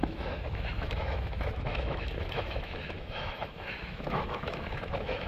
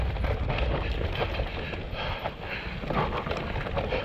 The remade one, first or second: first